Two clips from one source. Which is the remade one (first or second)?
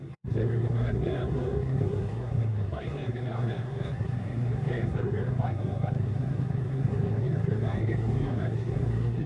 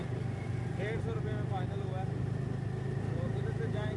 first